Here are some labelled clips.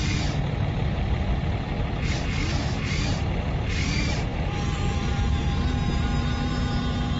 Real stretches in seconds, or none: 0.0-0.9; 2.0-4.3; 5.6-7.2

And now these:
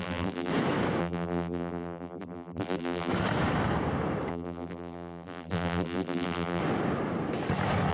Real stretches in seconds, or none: 0.5-1.0; 3.1-4.3; 6.6-7.9

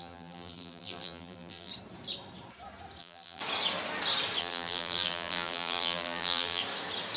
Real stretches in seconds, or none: 1.7-3.0; 3.4-4.4; 6.6-7.2

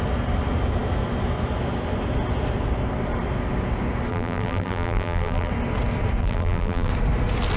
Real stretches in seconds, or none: 0.0-4.1; 5.5-6.2; 6.9-7.6

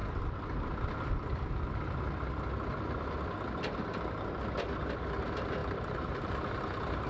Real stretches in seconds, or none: 0.0-5.6

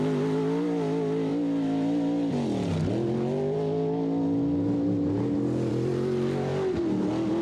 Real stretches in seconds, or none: 0.0-7.4